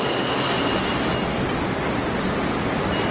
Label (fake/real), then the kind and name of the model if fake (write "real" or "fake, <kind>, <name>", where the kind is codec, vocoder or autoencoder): real